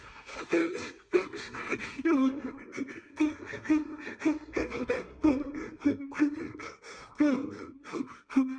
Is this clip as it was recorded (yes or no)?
no